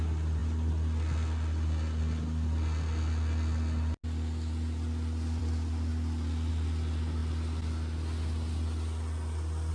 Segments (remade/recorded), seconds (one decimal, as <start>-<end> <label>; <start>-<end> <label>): 0.0-9.7 recorded